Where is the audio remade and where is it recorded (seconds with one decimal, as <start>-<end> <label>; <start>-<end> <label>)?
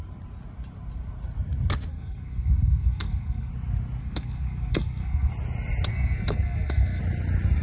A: 0.0-1.9 recorded; 1.9-3.5 remade; 3.5-4.0 recorded; 4.0-5.3 remade; 5.3-5.9 recorded; 5.9-7.0 remade; 7.0-7.6 recorded